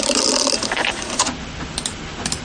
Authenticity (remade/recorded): recorded